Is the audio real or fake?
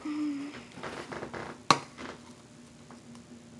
real